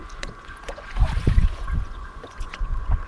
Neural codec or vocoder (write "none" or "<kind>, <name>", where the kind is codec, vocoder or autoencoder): vocoder, Vocos